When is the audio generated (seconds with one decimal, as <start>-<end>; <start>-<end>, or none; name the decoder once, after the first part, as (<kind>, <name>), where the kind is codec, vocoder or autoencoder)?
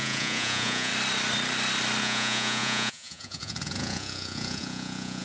0.0-0.9 (vocoder, Vocos); 2.0-5.2